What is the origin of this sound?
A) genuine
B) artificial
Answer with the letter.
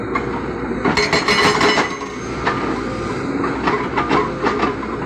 A